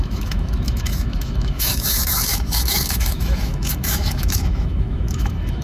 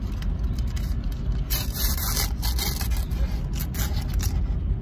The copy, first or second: first